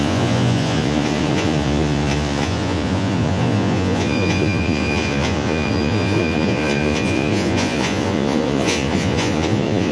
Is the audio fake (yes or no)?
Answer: yes